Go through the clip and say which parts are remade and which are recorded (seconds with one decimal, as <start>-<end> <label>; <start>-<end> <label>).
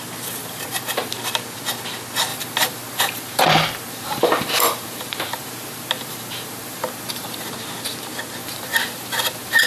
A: 0.0-0.4 recorded; 0.4-1.1 remade; 1.1-2.3 recorded; 2.3-7.5 remade; 7.5-8.4 recorded; 8.4-9.7 remade